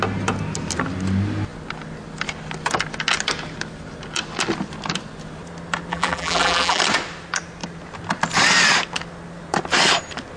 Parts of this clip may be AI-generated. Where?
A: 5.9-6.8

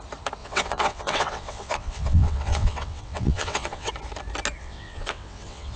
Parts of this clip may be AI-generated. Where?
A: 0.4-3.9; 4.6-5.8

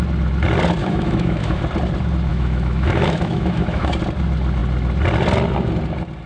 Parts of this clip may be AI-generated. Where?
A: 0.8-1.6; 2.3-3.9

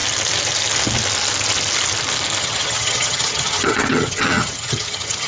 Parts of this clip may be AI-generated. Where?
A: 2.4-5.3

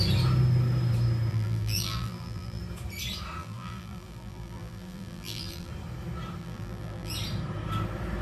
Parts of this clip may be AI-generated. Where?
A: 1.3-2.6; 3.4-5.7; 6.4-7.1

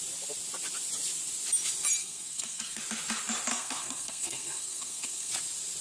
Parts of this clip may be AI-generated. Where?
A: 2.0-2.8; 3.5-5.3

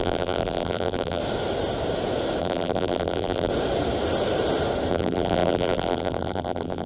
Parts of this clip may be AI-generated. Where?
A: 0.0-1.2; 2.4-3.5; 4.9-6.9